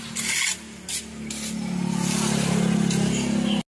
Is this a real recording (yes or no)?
yes